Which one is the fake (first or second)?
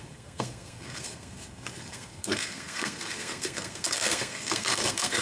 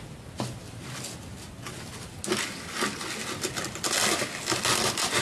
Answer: first